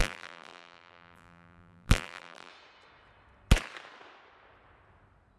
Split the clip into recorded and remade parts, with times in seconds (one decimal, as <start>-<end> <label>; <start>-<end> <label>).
0.0-2.5 remade; 2.5-5.4 recorded